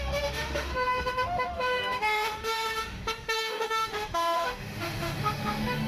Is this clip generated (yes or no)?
yes